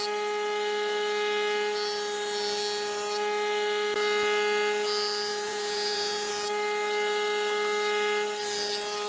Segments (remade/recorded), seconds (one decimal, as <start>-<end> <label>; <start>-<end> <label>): 0.0-5.3 recorded; 5.3-6.3 remade; 6.3-9.1 recorded